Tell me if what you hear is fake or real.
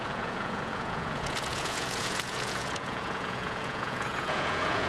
fake